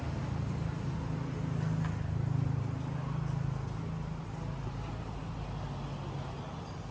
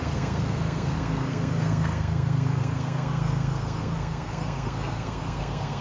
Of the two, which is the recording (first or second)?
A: first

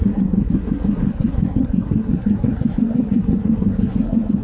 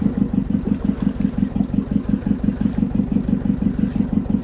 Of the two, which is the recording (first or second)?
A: second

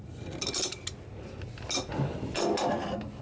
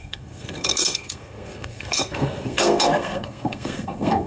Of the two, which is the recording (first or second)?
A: first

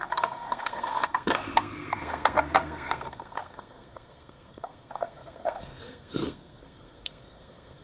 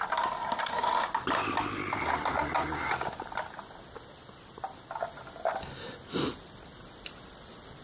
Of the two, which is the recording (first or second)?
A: second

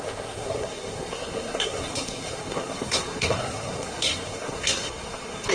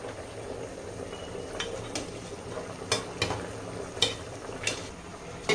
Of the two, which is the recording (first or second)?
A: second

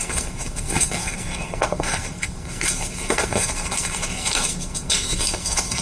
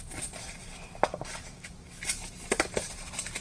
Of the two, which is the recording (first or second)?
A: second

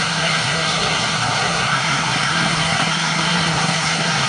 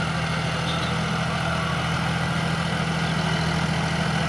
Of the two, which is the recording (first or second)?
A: second